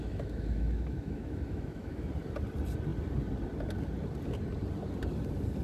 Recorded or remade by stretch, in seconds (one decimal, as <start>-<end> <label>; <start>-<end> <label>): 0.0-2.1 remade; 2.1-5.6 recorded

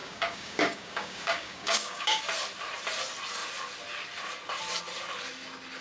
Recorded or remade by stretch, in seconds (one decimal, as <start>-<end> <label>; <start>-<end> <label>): 0.0-2.2 remade; 2.2-5.8 recorded

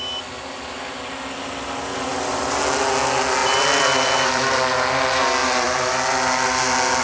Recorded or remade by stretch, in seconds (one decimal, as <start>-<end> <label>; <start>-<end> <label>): 0.0-2.1 recorded; 2.1-2.6 remade; 2.6-3.4 recorded; 3.4-4.4 remade; 4.4-5.4 recorded; 5.4-5.9 remade; 5.9-7.0 recorded

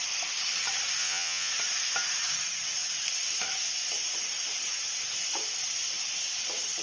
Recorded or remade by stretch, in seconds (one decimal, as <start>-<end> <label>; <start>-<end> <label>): 0.0-1.0 recorded; 1.0-1.5 remade; 1.5-6.8 recorded

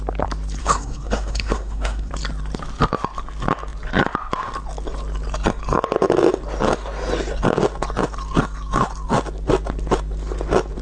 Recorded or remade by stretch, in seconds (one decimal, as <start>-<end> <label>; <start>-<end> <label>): 0.0-0.6 recorded; 0.6-2.1 remade; 2.1-10.8 recorded

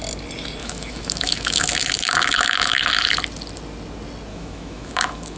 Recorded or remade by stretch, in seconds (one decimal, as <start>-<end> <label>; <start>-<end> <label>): 0.0-0.6 recorded; 0.6-3.1 remade; 3.1-4.3 recorded; 4.3-5.4 remade

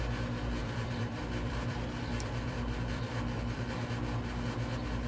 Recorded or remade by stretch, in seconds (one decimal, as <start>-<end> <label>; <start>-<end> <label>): 0.0-0.6 recorded; 0.6-3.7 remade; 3.7-5.1 recorded